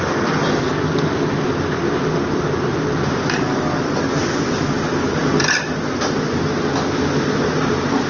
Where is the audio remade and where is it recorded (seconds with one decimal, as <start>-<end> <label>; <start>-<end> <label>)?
0.0-8.1 recorded